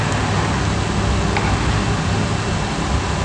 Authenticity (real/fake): real